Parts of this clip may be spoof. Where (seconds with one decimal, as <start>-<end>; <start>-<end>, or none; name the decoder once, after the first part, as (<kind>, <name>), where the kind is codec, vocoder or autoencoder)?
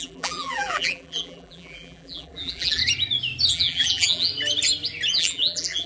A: 0.0-2.8 (vocoder, BigVGAN v2); 3.5-4.3; 5.1-5.9